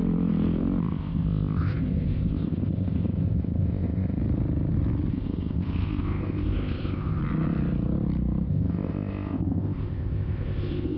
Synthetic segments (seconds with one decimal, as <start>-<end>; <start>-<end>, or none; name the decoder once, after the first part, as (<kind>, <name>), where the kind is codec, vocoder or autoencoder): 0.8-4.2 (codec, ZipCodec); 5.1-7.2; 8.5-11.0